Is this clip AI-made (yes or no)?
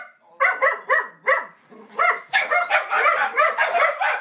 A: no